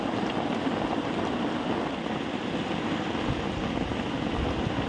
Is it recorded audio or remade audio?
recorded